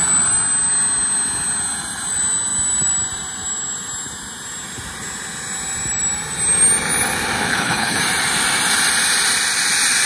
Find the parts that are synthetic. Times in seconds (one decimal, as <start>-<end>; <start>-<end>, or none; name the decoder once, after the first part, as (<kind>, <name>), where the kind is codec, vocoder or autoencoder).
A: 7.5-8.0 (codec, HILCodec)